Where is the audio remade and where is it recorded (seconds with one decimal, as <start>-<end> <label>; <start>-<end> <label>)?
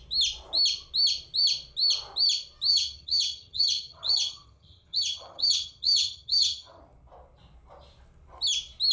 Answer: 0.0-2.7 recorded; 2.7-6.8 remade; 6.8-8.9 recorded